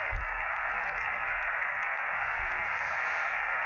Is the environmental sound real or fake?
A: fake